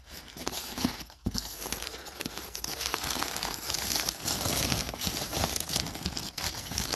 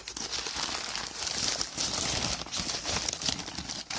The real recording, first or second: second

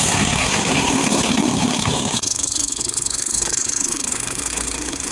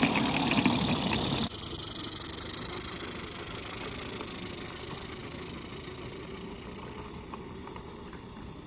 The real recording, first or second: second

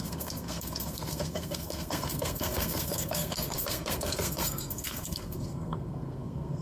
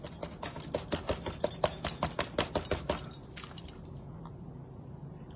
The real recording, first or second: second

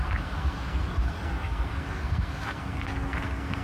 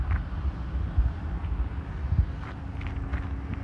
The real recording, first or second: second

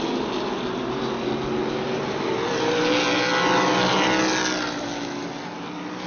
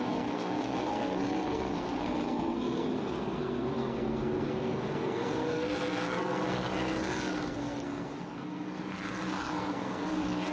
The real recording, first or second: first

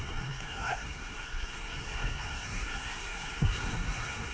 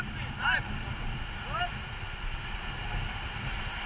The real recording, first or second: second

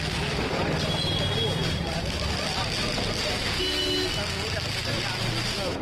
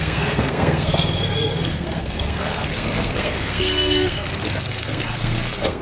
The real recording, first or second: first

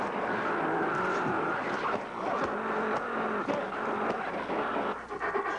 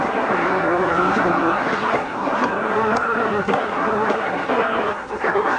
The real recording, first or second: first